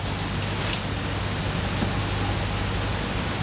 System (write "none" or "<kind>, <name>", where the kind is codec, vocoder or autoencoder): none